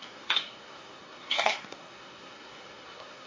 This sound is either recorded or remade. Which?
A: remade